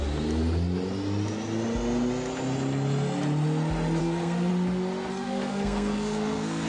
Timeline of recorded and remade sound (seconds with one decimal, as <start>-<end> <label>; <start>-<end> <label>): 0.0-4.0 recorded; 4.0-4.5 remade; 4.5-5.1 recorded; 5.1-6.7 remade